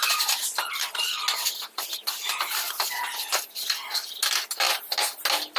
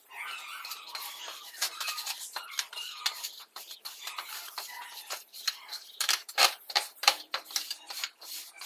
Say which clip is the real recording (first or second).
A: first